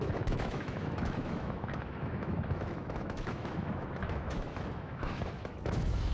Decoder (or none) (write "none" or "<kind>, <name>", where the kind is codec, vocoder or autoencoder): autoencoder, DAC-VAE